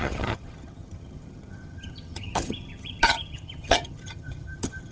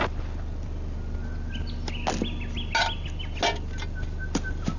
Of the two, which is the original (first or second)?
second